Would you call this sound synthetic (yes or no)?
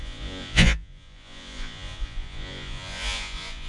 yes